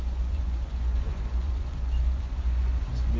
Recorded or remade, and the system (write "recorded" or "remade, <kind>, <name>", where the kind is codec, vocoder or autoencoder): remade, vocoder, Vocos